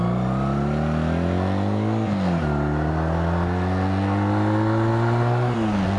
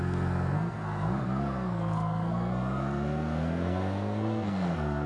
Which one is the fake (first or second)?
second